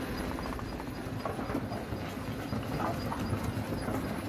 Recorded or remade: recorded